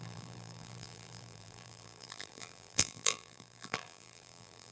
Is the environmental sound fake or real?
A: fake